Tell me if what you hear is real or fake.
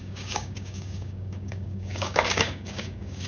fake